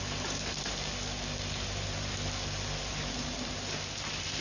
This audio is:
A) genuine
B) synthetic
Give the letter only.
A